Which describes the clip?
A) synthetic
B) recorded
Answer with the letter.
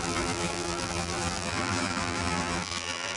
A